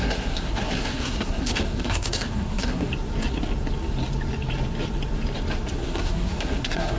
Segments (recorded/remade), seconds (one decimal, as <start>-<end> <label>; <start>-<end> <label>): 0.0-2.9 remade; 2.9-5.7 recorded; 5.7-7.0 remade